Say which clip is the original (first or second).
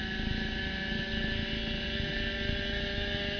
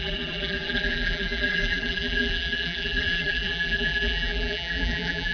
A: first